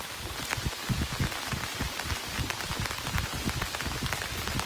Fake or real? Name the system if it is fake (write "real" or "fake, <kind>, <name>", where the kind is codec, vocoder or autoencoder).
real